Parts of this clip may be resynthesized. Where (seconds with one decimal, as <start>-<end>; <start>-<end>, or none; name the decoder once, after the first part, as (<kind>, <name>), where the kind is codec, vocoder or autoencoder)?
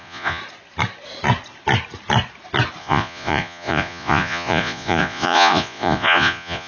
0.0-0.4 (vocoder, Vocos); 2.8-6.7